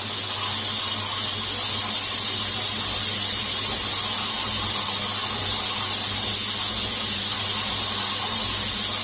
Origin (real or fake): real